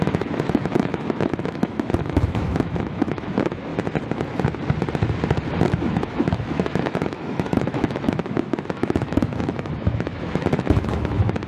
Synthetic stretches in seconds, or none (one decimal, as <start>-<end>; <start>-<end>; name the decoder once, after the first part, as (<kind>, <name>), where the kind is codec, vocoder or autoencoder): 0.0-3.7 (autoencoder, DAC-VAE); 5.8-11.5